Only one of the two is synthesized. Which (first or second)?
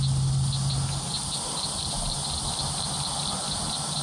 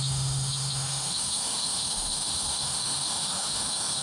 second